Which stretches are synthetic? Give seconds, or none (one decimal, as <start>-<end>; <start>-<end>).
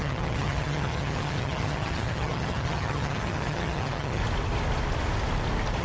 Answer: 0.0-4.2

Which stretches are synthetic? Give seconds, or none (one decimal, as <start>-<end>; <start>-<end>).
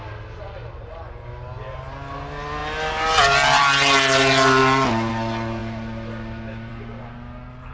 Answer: none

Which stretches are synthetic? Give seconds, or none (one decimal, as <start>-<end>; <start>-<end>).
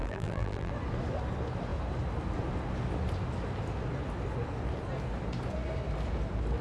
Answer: 0.0-0.7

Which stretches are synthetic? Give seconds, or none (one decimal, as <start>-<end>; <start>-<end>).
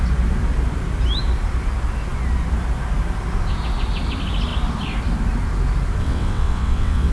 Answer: 6.0-7.1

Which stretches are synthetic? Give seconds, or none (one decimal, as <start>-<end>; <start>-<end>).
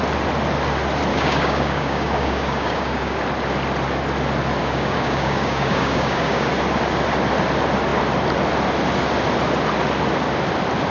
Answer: 1.1-3.2; 4.6-6.5